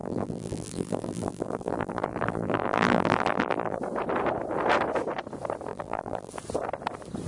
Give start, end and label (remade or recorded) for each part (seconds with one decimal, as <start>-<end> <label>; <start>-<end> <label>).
0.0-3.8 remade; 3.8-5.7 recorded; 5.7-6.3 remade; 6.3-7.3 recorded